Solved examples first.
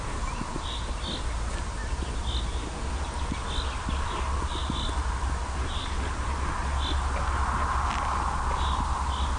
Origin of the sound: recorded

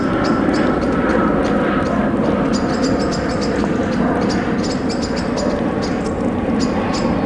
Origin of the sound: recorded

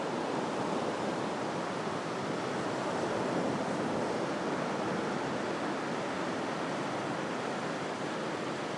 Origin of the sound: recorded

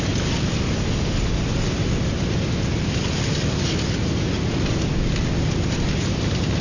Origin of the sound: recorded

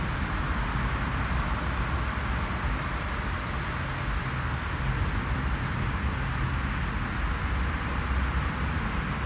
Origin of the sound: recorded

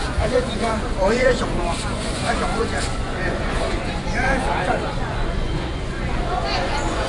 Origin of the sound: remade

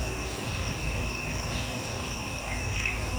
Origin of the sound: remade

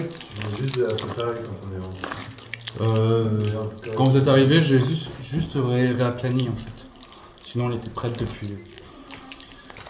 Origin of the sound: recorded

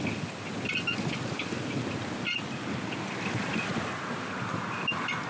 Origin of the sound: recorded